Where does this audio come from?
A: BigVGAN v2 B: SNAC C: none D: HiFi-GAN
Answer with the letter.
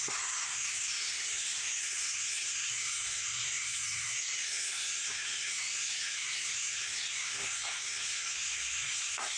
B